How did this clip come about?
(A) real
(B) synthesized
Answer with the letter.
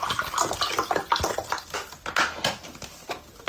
A